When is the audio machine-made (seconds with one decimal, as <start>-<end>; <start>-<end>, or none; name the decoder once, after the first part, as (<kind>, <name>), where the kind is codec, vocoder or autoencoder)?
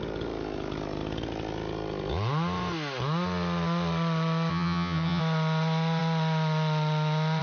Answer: 4.5-5.2 (vocoder, HiFi-GAN)